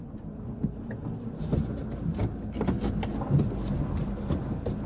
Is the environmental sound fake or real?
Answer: real